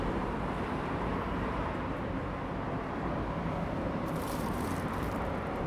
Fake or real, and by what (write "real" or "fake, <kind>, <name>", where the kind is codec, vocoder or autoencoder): fake, vocoder, BigVGAN v2